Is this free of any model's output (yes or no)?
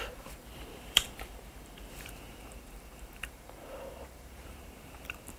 no